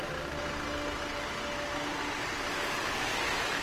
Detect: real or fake real